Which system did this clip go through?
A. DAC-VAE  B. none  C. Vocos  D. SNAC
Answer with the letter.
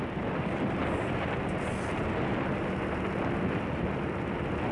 B